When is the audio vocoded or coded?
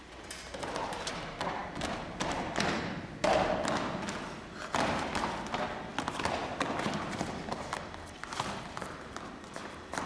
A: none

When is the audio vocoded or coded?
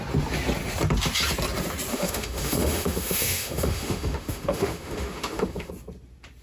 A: 1.9-5.7 (autoencoder, DAC-VAE)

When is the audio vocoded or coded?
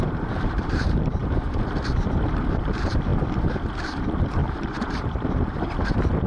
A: 0.0-6.3 (vocoder, BigVGAN v2)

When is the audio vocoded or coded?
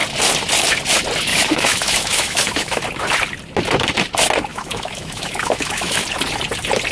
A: 1.3-2.8 (autoencoder, DAC-VAE); 4.5-6.0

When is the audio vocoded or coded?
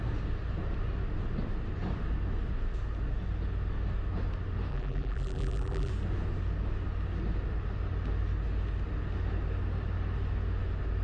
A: 4.7-5.9 (vocoder, BigVGAN v2)